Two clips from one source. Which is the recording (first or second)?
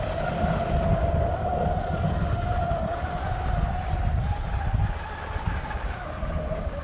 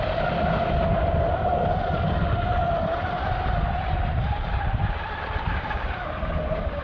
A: first